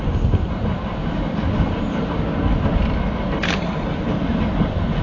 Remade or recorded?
recorded